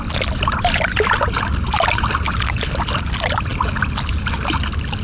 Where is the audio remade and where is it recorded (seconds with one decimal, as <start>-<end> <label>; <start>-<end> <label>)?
0.0-3.0 remade; 3.0-3.5 recorded; 3.5-4.6 remade; 4.6-5.0 recorded